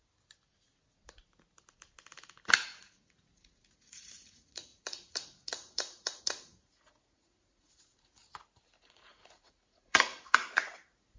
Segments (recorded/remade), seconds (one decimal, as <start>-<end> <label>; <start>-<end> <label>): 0.0-2.8 recorded; 2.8-8.2 remade; 8.2-8.8 recorded; 8.8-11.2 remade